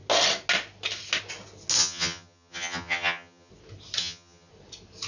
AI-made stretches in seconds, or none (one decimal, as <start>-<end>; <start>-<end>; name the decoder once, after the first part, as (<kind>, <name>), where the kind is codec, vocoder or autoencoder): 1.8-3.5 (vocoder, HiFi-GAN); 4.0-4.5